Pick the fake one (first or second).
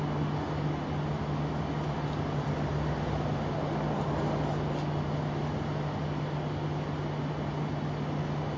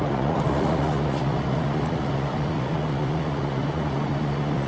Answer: second